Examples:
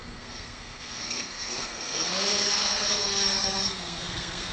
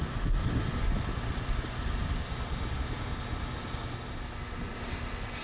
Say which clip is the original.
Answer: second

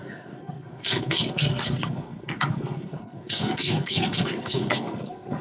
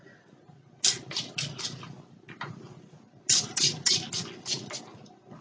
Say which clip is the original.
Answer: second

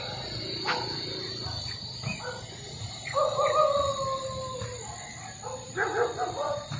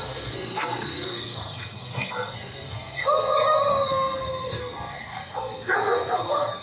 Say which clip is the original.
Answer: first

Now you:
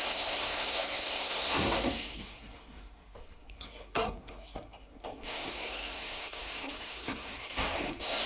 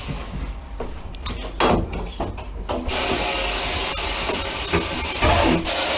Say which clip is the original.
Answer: second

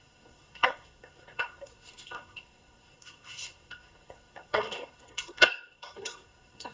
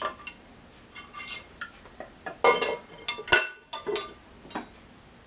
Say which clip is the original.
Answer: second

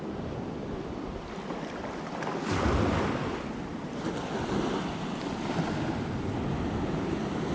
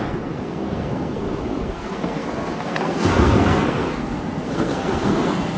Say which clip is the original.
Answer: first